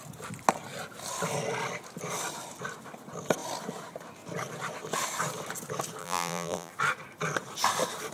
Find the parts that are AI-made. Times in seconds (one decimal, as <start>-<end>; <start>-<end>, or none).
6.0-6.7